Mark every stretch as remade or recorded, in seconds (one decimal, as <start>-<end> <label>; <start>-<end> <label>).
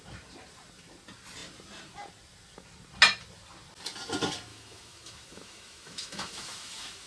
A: 0.0-4.5 recorded; 4.5-7.1 remade